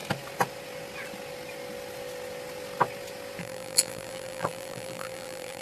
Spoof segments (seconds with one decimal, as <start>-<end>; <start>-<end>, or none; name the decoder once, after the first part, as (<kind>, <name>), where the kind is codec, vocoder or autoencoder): 3.4-5.6 (vocoder, BigVGAN v2)